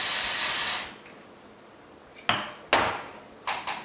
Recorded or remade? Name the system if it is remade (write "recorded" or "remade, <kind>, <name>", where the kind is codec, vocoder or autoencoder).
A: recorded